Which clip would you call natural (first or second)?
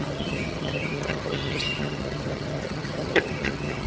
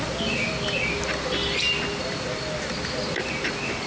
second